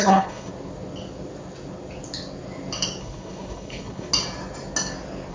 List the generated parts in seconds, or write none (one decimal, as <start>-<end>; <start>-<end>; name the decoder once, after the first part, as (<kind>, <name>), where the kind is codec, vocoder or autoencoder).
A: 0.0-0.5 (codec, HILCodec); 3.0-4.1